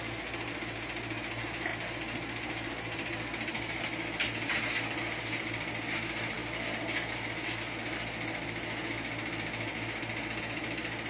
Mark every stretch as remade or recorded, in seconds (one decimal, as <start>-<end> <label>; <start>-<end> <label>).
0.0-11.1 recorded